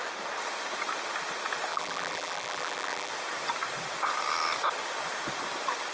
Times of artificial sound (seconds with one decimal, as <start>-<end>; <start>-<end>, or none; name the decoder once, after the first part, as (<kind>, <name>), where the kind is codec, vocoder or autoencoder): 1.7-3.1 (vocoder, BigVGAN v2)